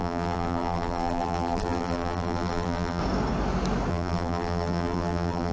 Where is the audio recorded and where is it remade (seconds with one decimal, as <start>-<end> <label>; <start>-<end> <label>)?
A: 0.0-3.0 remade; 3.0-3.9 recorded; 3.9-5.5 remade